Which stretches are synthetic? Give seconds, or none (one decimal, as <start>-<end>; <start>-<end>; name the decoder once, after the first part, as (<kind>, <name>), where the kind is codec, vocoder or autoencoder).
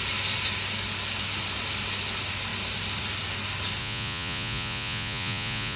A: 3.8-5.8 (vocoder, Vocos)